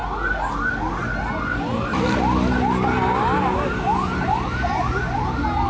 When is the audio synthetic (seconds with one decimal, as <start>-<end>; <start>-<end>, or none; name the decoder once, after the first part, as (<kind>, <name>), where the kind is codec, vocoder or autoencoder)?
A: none